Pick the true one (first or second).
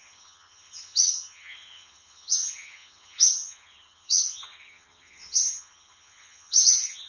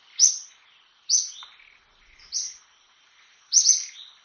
second